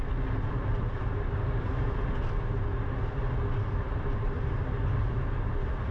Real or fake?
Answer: real